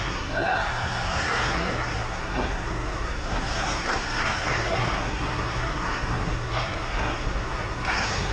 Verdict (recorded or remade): remade